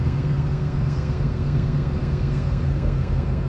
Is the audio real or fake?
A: fake